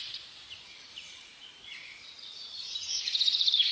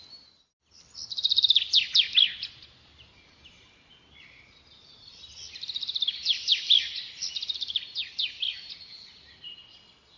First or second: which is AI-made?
first